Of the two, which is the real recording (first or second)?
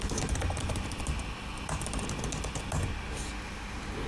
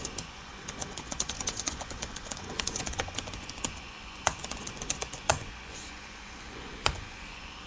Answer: first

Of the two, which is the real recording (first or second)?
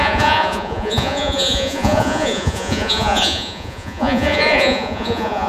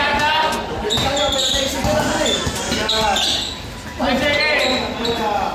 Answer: second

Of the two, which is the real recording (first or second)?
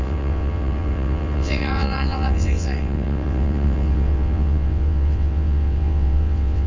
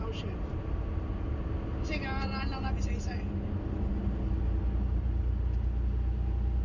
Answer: second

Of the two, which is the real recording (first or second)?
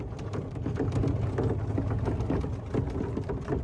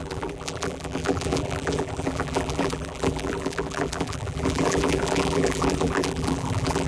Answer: first